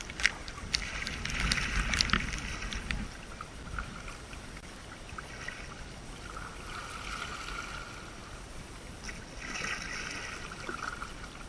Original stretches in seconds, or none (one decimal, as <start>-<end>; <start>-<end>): 0.0-11.5